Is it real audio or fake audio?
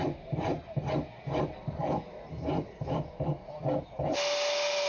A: real